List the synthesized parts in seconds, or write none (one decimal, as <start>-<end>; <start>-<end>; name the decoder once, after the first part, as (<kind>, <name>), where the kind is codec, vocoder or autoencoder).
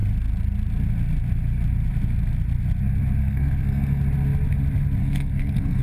3.2-4.0 (codec, SNAC); 5.0-5.8